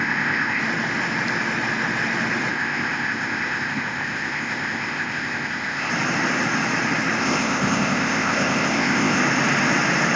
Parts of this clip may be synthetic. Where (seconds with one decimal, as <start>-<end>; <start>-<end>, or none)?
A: 0.0-0.6; 2.5-5.9; 7.2-9.2